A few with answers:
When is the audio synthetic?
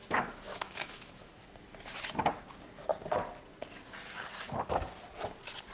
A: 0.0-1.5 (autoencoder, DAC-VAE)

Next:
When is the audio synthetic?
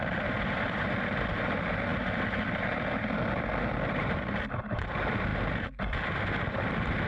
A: none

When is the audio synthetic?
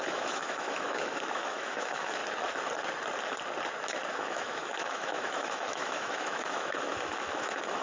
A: 0.0-2.2 (autoencoder, DAC-VAE); 4.1-7.8